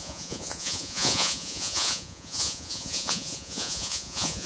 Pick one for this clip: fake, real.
fake